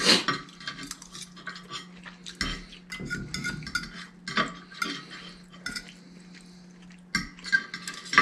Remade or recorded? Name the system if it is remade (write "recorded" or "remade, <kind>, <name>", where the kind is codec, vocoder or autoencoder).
recorded